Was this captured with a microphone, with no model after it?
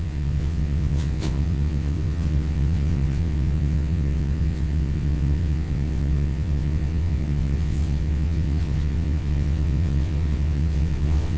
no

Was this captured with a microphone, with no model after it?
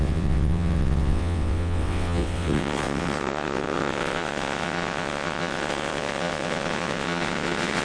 no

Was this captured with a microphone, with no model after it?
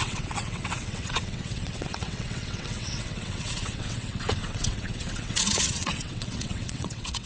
no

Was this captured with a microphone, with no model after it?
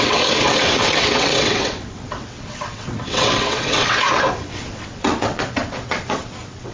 no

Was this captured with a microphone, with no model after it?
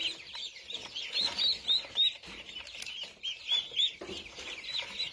yes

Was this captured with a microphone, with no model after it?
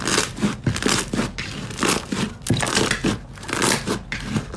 yes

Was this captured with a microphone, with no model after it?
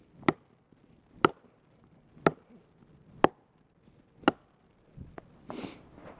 yes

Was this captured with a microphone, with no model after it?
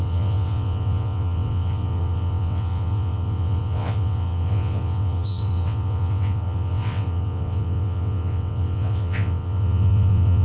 no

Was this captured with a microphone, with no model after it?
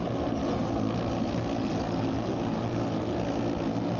yes